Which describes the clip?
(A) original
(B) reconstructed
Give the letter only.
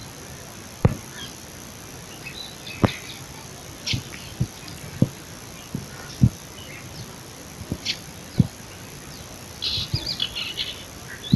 A